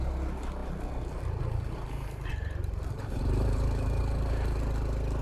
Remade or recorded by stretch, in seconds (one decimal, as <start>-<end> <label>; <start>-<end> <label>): 0.0-2.3 recorded; 2.3-4.0 remade; 4.0-5.2 recorded